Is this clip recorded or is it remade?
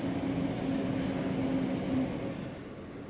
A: recorded